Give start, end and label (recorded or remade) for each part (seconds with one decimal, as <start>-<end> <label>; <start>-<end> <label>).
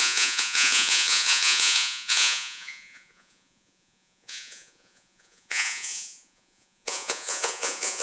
0.0-8.0 remade